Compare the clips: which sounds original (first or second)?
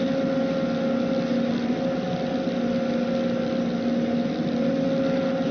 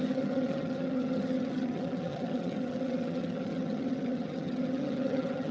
first